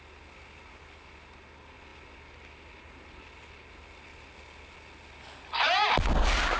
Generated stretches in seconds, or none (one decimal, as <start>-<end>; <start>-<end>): none